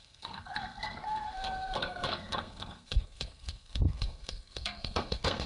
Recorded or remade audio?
remade